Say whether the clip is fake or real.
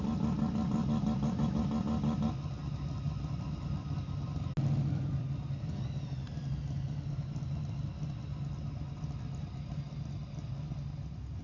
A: real